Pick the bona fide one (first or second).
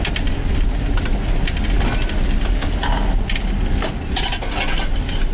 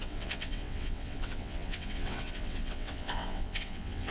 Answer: first